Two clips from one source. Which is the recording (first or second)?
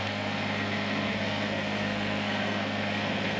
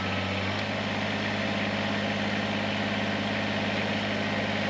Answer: second